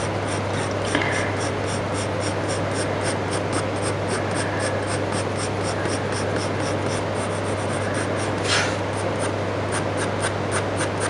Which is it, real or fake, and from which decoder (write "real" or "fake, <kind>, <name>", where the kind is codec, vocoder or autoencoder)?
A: real